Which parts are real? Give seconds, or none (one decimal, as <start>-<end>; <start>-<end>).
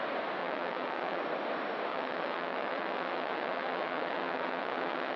0.0-0.4; 1.2-1.9